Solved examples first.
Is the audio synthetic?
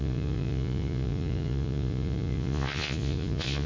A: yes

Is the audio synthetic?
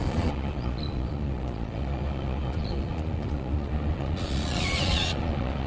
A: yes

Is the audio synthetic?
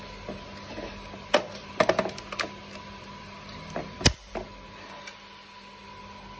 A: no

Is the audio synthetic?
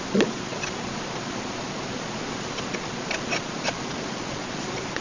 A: yes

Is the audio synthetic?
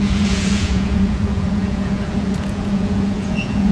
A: yes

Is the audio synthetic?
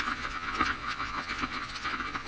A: yes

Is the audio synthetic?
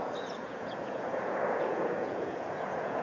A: yes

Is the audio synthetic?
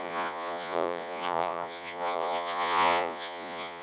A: yes